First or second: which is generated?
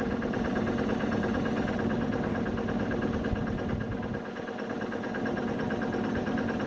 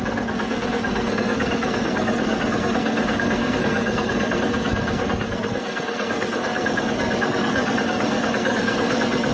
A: second